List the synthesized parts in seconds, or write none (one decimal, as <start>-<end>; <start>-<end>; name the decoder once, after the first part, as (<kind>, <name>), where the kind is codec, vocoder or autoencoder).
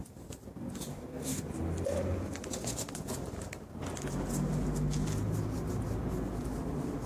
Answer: 0.9-1.4 (codec, DAC)